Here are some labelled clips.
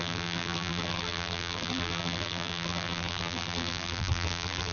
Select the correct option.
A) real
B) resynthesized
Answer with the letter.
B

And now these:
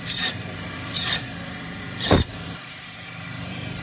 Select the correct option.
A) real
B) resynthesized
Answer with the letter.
B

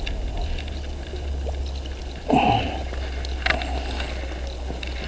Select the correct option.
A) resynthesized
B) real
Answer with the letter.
B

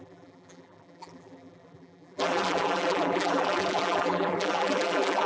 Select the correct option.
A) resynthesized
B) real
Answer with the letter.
A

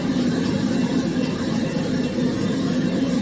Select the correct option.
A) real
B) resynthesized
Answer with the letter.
A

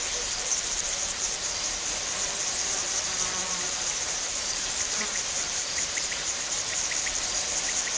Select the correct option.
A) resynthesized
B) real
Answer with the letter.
A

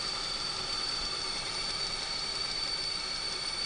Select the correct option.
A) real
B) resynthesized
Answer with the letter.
B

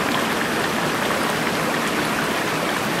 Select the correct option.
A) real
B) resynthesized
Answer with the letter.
A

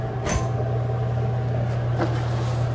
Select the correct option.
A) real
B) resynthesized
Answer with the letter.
A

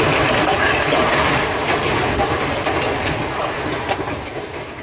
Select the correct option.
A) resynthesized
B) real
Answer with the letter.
B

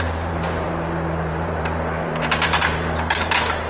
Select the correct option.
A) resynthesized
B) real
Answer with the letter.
A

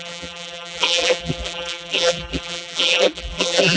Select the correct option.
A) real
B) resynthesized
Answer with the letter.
B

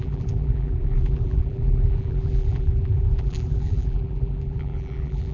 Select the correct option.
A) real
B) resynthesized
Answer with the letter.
B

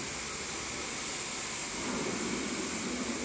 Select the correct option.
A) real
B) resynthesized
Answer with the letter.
B